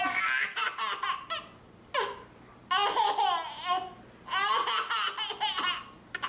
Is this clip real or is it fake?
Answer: real